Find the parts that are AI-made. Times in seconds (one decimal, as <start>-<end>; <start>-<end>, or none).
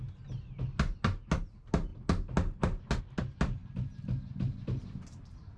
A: none